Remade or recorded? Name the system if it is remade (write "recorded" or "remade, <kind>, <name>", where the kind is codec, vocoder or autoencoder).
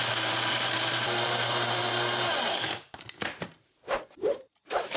remade, vocoder, BigVGAN v2